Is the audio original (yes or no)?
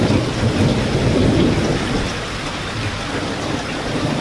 yes